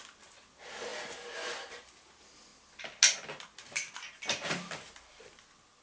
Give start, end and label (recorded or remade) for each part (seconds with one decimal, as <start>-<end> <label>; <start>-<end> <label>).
0.0-5.8 recorded